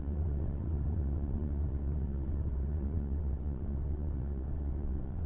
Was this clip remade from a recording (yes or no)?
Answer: yes